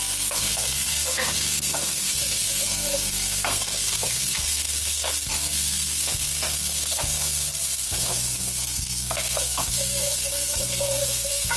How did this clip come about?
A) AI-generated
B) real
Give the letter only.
A